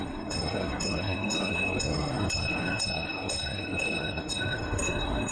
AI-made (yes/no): yes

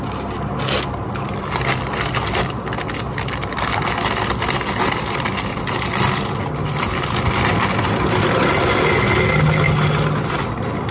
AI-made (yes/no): no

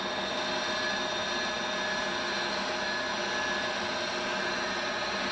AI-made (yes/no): no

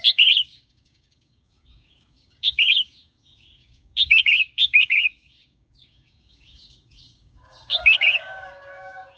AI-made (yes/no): yes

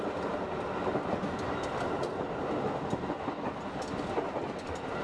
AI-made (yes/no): no